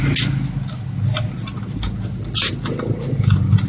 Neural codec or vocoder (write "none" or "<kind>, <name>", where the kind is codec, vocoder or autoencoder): none